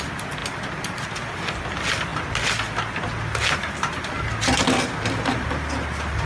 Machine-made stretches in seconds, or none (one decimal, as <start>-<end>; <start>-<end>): none

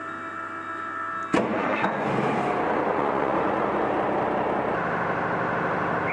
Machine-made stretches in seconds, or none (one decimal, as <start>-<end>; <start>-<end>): 1.5-2.1; 2.9-3.9

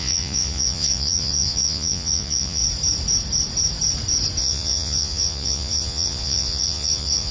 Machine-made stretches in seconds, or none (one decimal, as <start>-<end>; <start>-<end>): 0.0-2.6; 4.4-7.3